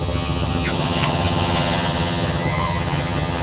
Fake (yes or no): yes